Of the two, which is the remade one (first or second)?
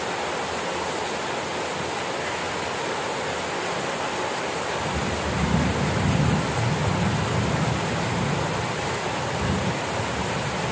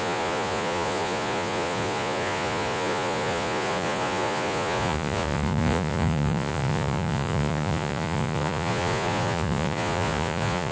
second